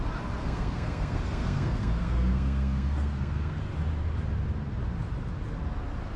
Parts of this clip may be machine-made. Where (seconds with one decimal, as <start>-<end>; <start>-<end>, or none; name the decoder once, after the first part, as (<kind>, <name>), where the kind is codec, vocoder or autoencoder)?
0.4-3.7 (codec, SNAC)